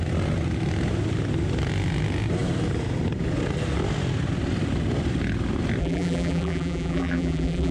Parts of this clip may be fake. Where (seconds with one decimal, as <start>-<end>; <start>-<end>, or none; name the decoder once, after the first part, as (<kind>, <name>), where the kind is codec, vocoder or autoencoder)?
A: 5.8-7.7 (vocoder, BigVGAN v2)